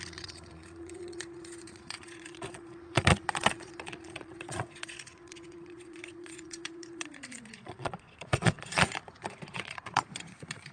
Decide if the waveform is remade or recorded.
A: remade